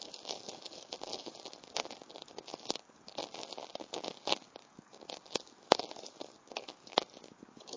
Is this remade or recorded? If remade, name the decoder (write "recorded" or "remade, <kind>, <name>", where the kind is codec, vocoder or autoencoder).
remade, codec, DAC